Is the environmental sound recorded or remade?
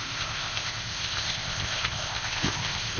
remade